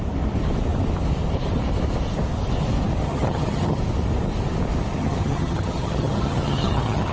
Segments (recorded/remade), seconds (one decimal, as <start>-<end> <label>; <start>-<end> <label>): 0.0-3.0 recorded; 3.0-3.8 remade; 3.8-4.9 recorded; 4.9-7.1 remade

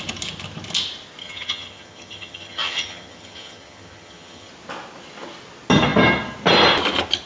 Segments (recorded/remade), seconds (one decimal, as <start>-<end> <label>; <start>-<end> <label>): 0.0-1.2 recorded; 1.2-4.5 remade; 4.5-7.3 recorded